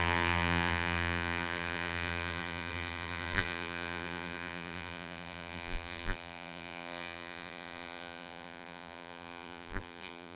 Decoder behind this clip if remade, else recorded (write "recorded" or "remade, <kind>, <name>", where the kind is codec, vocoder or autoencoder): remade, vocoder, BigVGAN v2